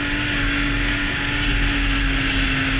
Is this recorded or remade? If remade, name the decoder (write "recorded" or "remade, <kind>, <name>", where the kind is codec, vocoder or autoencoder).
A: recorded